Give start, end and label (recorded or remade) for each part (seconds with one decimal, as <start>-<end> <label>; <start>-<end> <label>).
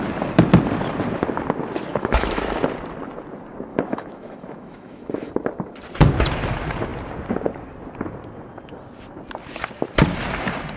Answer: 0.0-1.9 recorded; 1.9-2.4 remade; 2.4-3.7 recorded; 3.7-5.3 remade; 5.3-10.8 recorded